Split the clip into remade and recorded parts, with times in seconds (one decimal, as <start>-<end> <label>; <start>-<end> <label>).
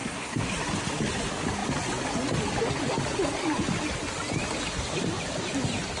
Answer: 0.0-0.5 remade; 0.5-6.0 recorded